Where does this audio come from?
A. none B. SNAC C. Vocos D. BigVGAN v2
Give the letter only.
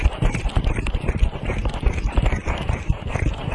D